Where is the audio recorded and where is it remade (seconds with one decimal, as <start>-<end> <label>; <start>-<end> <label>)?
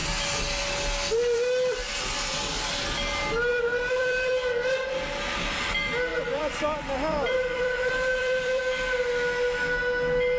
0.0-3.5 recorded; 3.5-4.3 remade; 4.3-6.1 recorded; 6.1-8.6 remade; 8.6-10.4 recorded